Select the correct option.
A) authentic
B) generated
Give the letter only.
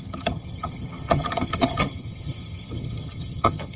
B